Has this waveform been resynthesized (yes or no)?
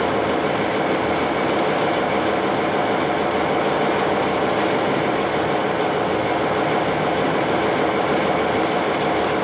no